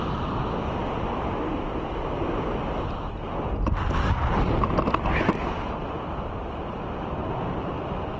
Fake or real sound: real